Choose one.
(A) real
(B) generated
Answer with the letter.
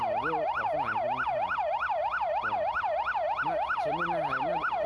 A